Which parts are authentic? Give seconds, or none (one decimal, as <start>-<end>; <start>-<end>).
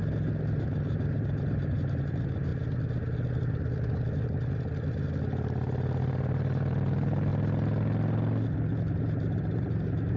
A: 0.0-0.6; 2.5-6.0; 7.3-8.8